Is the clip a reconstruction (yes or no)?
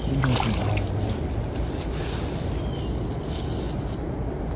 no